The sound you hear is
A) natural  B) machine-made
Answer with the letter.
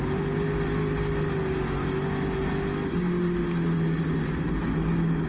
A